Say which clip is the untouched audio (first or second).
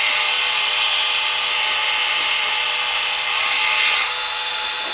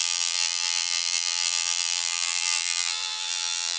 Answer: first